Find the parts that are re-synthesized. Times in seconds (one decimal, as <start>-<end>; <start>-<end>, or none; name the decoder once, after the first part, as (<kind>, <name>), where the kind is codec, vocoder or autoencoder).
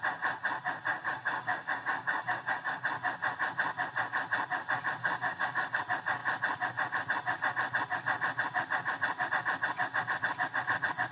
0.9-2.8 (codec, DAC); 5.0-5.8